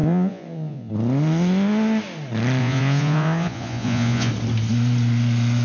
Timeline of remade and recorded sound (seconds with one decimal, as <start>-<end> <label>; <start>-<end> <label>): 0.0-0.9 remade; 0.9-2.6 recorded; 2.6-4.3 remade; 4.3-5.6 recorded